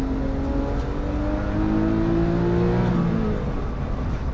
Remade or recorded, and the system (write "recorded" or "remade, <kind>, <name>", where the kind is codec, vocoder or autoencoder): recorded